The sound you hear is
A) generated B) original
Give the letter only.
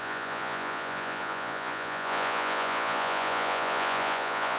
A